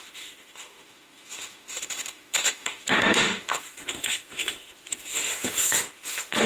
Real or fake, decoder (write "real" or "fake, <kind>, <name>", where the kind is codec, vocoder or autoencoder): fake, autoencoder, DAC-VAE